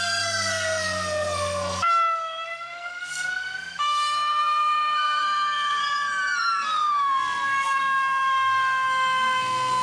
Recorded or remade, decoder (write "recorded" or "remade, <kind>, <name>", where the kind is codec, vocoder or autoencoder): remade, codec, SNAC